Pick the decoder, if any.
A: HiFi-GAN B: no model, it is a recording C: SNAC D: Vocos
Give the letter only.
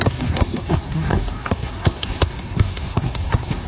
C